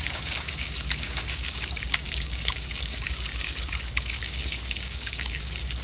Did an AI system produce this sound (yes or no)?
yes